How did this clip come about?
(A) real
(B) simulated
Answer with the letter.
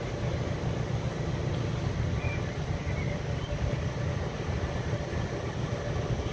A